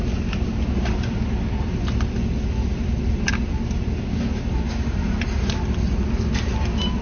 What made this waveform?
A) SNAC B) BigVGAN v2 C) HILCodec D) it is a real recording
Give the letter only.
D